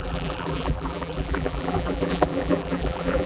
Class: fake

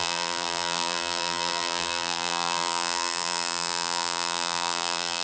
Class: fake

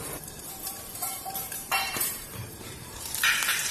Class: fake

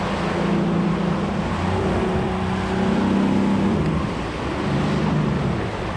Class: real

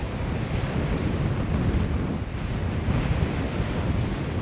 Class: real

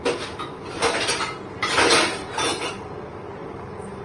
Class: real